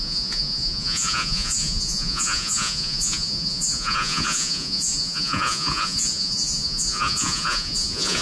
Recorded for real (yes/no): no